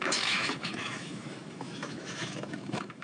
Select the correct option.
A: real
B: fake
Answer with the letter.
B